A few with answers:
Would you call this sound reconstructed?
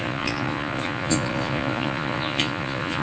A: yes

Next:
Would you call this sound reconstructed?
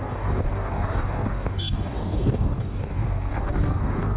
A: yes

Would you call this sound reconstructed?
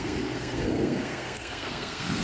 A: yes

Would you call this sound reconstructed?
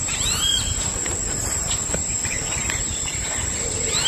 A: yes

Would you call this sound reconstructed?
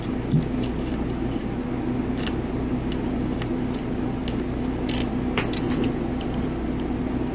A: no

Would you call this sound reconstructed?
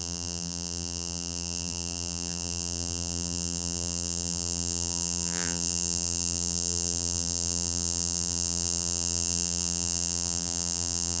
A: yes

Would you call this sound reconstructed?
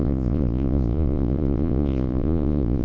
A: yes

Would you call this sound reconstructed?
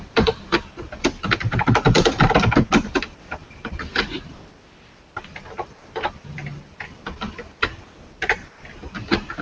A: yes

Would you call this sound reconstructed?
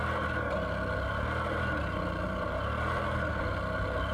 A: no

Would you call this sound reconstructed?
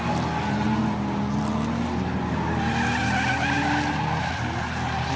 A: no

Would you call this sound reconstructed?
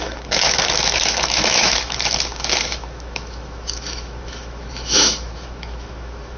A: yes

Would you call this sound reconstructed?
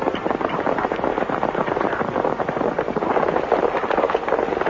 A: no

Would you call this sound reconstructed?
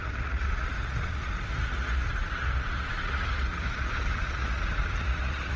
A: yes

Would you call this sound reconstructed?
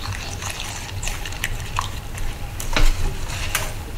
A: yes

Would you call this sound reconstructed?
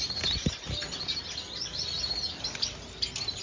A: no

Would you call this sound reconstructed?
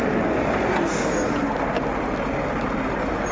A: no